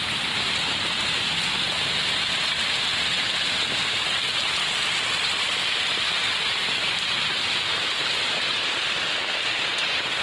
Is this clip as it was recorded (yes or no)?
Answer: yes